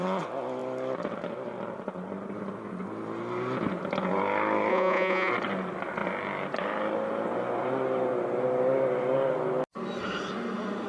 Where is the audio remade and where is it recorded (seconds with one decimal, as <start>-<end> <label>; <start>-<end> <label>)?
0.0-4.7 recorded; 4.7-5.3 remade; 5.3-10.9 recorded